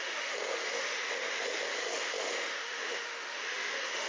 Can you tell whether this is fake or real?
fake